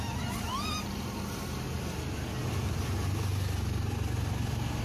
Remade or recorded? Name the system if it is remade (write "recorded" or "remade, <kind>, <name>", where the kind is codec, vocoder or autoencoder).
recorded